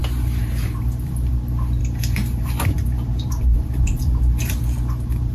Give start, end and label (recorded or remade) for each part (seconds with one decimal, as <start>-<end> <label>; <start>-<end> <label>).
0.0-1.3 remade; 1.3-1.8 recorded; 1.8-4.2 remade; 4.2-5.3 recorded